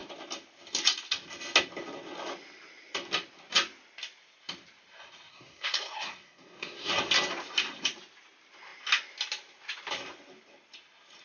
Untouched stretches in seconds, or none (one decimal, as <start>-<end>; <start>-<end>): 0.0-5.3; 6.9-11.2